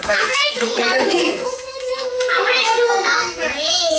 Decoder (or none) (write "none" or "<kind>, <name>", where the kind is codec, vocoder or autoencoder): codec, SNAC